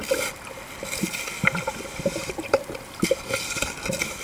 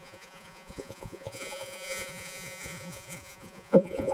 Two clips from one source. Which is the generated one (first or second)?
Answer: second